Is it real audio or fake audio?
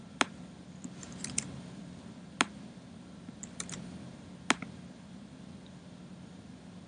real